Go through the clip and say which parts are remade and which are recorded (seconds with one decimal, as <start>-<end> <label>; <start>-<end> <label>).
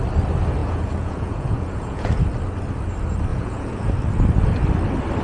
0.0-0.6 recorded; 0.6-2.2 remade; 2.2-3.3 recorded; 3.3-3.9 remade; 3.9-5.2 recorded